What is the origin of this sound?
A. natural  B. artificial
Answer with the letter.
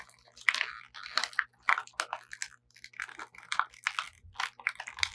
A